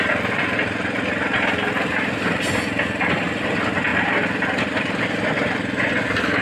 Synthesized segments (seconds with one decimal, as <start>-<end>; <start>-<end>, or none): none